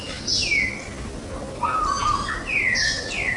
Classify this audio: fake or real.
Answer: real